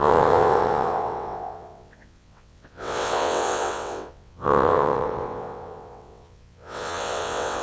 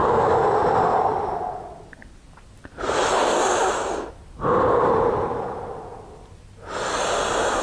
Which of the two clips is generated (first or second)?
first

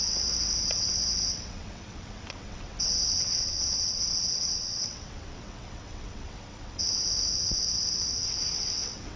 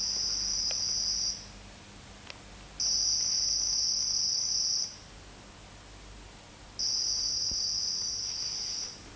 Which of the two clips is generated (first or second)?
first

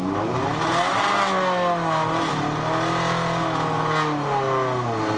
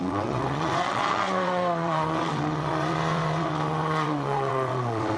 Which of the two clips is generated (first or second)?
second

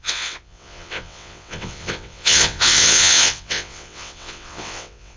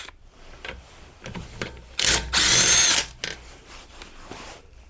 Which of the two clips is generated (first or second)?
first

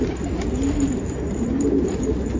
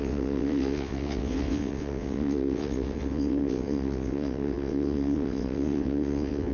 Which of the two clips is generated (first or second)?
second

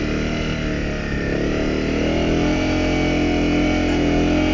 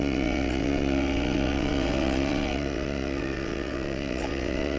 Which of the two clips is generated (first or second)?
second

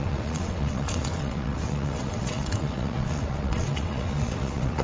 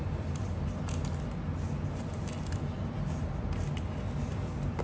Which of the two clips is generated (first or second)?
first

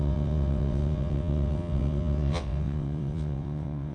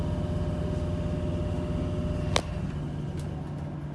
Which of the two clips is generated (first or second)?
first